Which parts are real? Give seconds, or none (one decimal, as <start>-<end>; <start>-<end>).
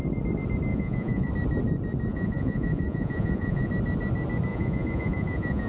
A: 0.0-0.7; 1.3-2.1; 3.7-4.5